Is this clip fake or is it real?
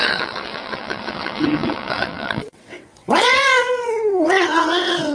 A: fake